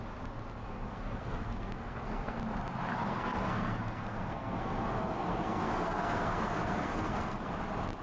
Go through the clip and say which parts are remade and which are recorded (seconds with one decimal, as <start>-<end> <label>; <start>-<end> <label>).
0.0-0.6 recorded; 0.6-2.4 remade; 2.4-2.9 recorded; 2.9-7.6 remade; 7.6-8.0 recorded